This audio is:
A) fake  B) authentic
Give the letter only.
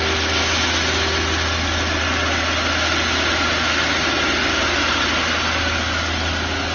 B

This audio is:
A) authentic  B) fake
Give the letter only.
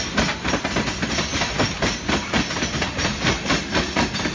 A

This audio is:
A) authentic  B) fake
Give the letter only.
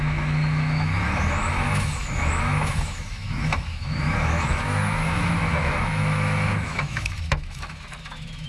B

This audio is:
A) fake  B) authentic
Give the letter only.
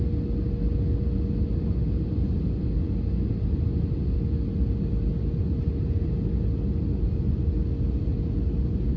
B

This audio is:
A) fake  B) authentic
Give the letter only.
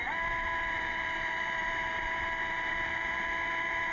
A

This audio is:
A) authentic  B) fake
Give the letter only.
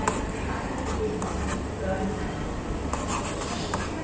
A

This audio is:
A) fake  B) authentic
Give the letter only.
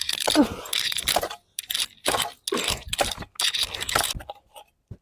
B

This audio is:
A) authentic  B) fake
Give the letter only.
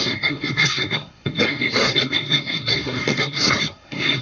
B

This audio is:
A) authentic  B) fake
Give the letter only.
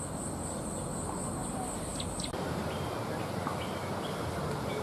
A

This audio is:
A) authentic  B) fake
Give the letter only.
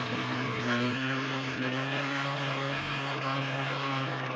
B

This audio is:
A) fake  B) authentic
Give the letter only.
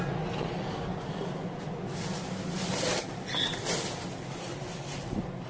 B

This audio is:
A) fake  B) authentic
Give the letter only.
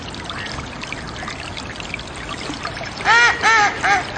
B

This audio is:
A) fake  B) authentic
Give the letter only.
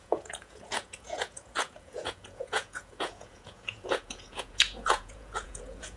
A